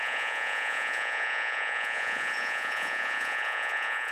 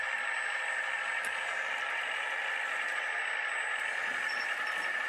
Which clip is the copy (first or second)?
first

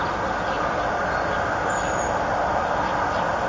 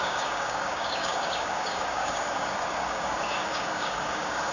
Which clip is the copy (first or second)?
second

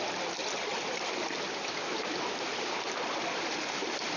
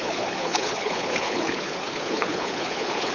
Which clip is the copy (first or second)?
second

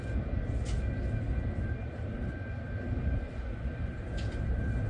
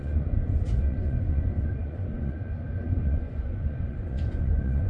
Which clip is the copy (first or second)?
second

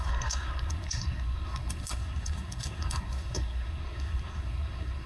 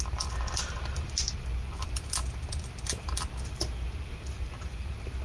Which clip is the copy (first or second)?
first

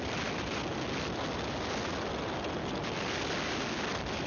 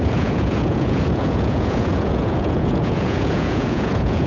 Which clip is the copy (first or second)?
second